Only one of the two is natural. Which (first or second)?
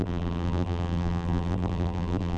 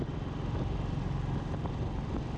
second